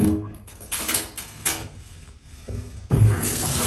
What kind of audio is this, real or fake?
fake